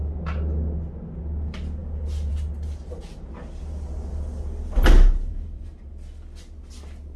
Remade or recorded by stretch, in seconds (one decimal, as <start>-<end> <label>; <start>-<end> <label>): 0.0-5.3 recorded; 5.3-5.8 remade; 5.8-7.2 recorded